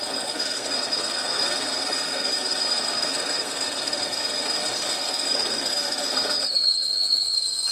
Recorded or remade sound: remade